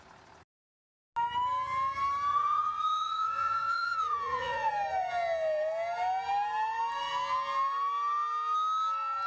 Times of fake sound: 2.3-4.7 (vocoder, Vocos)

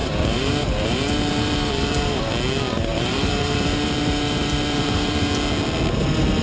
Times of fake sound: 0.0-2.2 (vocoder, BigVGAN v2); 2.9-5.3

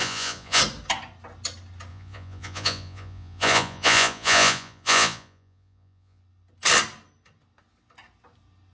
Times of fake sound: 0.0-0.6 (vocoder, Vocos); 1.9-6.2

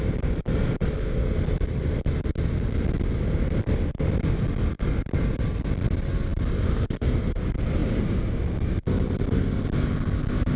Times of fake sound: none